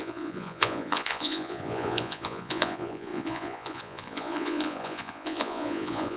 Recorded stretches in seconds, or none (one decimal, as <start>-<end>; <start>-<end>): none